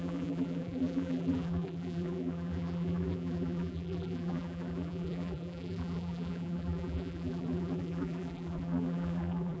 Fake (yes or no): yes